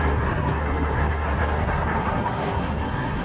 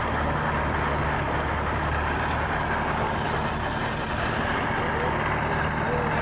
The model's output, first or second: first